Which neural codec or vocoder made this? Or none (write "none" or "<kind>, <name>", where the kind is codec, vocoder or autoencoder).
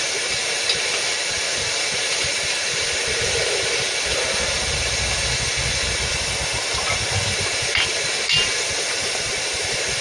none